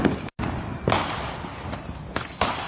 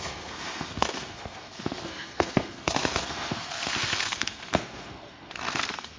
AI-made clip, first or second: second